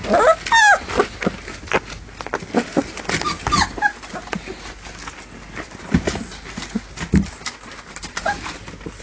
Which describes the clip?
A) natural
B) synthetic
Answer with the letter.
A